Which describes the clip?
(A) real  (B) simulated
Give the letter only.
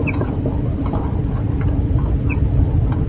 B